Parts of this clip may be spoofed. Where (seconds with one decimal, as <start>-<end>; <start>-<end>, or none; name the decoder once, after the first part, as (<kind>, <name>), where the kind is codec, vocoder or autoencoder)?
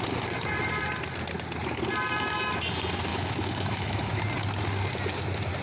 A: 3.1-4.2 (autoencoder, DAC-VAE)